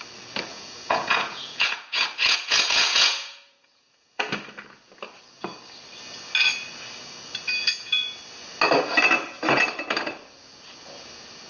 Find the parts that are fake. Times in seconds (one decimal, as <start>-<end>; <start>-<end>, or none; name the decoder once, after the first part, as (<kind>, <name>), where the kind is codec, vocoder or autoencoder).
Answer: 0.5-4.3 (vocoder, Vocos); 7.6-8.2

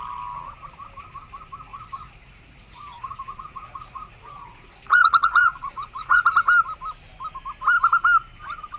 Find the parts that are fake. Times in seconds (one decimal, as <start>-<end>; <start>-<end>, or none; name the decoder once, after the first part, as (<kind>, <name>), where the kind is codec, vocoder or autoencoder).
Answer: 1.7-6.2 (vocoder, Vocos)

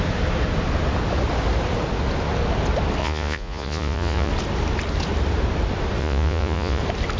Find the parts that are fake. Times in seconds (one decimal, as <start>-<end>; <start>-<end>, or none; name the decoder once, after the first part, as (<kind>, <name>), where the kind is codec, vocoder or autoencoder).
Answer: 3.0-4.3 (vocoder, Vocos); 6.0-6.8